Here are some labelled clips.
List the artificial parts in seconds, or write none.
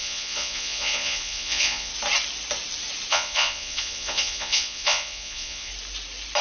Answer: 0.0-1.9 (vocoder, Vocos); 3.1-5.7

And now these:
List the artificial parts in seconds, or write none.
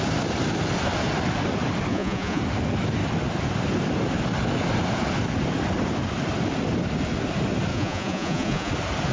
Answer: 1.9-2.4 (vocoder, Vocos); 7.7-8.7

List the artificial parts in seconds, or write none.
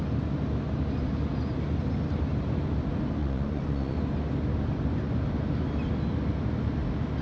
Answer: 3.2-4.0 (vocoder, Vocos)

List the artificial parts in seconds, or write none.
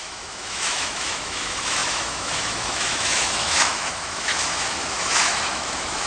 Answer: 0.0-6.1 (autoencoder, DAC-VAE)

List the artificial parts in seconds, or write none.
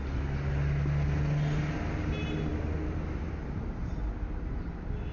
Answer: none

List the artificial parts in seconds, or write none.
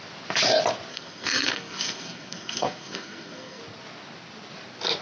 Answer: 0.9-3.6 (codec, SNAC)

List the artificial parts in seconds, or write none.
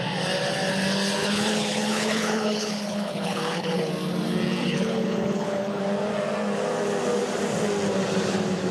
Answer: 1.2-3.9 (codec, HILCodec); 4.6-5.8